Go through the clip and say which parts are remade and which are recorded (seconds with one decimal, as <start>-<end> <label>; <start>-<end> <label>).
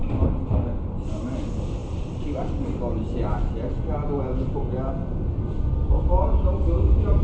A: 0.0-5.0 recorded; 5.0-6.0 remade; 6.0-7.2 recorded